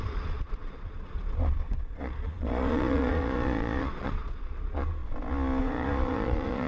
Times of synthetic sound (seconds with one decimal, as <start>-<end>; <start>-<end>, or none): 0.0-5.0; 5.6-6.7